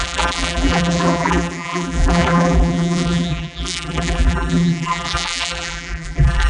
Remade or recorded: remade